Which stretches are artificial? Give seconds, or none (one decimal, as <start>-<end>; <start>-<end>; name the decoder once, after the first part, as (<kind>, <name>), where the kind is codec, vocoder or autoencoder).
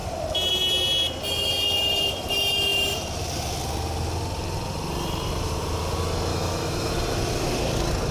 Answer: 6.3-6.9 (autoencoder, DAC-VAE)